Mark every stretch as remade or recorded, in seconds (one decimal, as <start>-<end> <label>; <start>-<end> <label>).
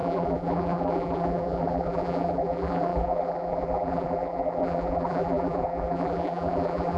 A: 0.0-7.0 remade